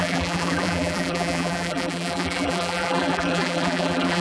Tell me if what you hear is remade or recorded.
remade